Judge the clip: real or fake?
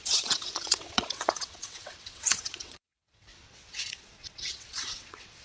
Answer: fake